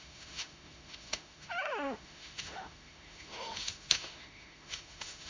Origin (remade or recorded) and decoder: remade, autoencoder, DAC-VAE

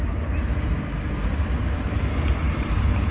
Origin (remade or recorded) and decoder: recorded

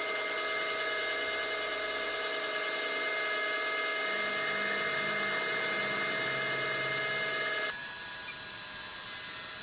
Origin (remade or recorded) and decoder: recorded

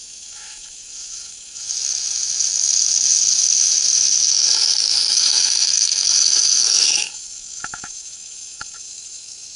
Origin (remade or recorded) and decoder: remade, autoencoder, DAC-VAE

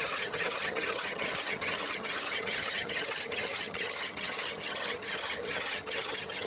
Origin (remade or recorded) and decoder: remade, vocoder, HiFi-GAN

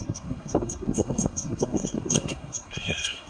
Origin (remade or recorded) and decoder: remade, codec, SNAC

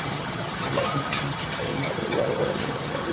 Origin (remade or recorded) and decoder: remade, vocoder, HiFi-GAN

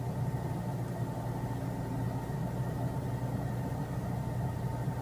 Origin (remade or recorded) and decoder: recorded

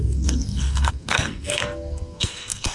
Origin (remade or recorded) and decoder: remade, codec, SNAC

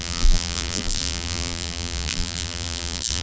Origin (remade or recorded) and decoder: remade, vocoder, BigVGAN v2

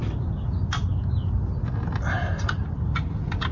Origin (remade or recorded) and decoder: recorded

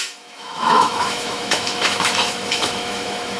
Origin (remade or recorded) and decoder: remade, autoencoder, DAC-VAE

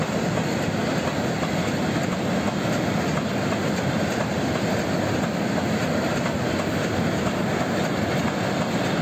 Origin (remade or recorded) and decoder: recorded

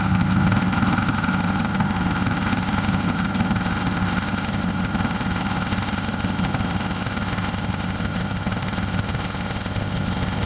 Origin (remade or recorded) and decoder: remade, codec, ZipCodec